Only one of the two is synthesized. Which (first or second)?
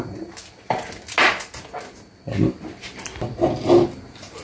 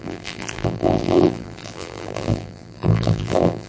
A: second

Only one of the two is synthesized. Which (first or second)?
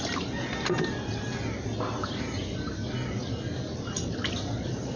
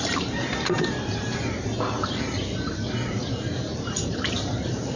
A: second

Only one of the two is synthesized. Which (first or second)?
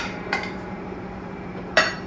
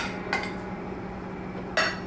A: first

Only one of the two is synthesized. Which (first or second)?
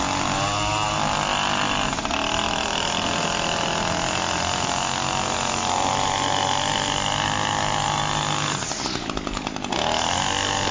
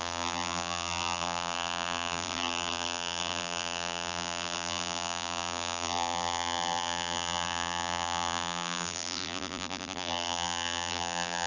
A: second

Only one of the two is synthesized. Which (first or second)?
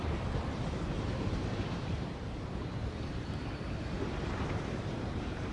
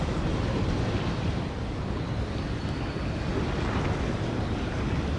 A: first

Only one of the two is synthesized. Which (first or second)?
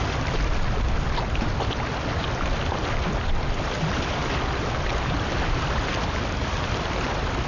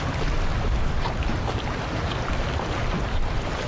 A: second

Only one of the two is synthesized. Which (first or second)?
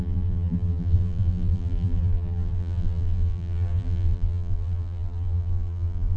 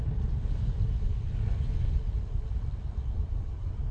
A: first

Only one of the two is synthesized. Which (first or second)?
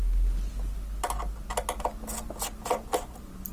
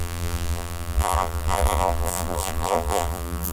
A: second